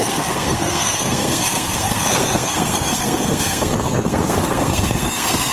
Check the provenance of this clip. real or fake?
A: fake